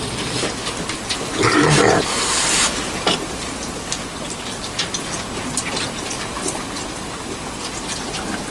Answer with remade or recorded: recorded